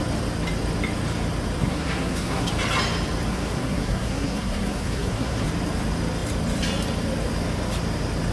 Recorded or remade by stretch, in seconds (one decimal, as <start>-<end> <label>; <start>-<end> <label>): 0.0-1.6 recorded; 1.6-2.5 remade; 2.5-3.3 recorded; 3.3-5.5 remade; 5.5-8.3 recorded